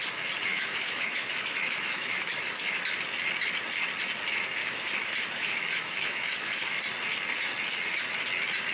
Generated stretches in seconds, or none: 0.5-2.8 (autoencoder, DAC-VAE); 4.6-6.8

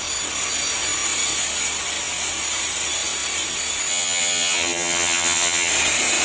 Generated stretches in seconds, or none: 3.9-5.7 (vocoder, HiFi-GAN)

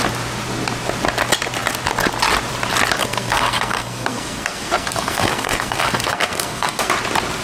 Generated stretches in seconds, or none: 3.0-6.9 (codec, SNAC)

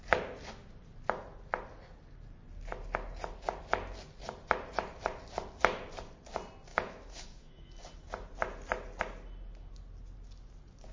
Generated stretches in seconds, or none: 6.7-7.7 (autoencoder, DAC-VAE)